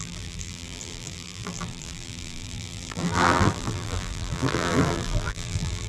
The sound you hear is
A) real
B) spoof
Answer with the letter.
B